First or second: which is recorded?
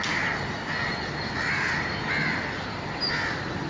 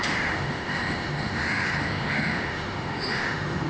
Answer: first